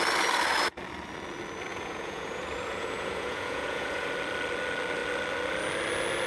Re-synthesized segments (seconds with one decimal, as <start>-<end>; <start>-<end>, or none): 1.7-4.1

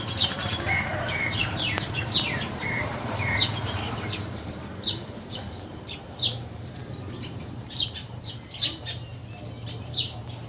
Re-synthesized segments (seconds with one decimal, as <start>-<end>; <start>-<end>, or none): 0.0-9.2; 9.8-10.5

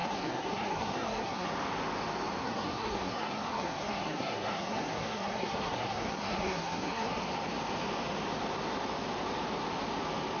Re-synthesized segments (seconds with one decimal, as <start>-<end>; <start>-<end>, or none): 0.0-1.5; 2.4-7.2

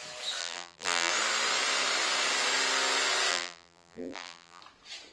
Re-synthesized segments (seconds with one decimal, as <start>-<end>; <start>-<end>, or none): 0.4-1.1; 3.3-4.6

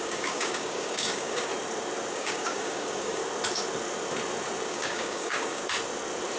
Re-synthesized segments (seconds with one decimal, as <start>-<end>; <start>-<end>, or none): 0.0-1.5; 2.1-3.2; 4.7-5.6

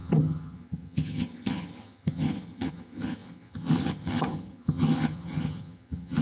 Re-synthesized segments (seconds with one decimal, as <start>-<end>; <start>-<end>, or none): 0.0-6.2